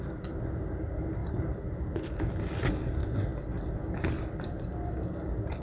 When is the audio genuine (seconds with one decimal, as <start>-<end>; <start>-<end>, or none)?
0.0-5.6